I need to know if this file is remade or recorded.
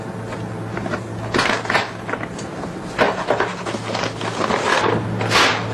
recorded